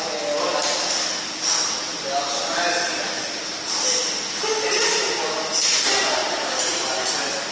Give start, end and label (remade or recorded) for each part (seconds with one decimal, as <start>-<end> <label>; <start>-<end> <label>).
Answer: 0.0-7.5 recorded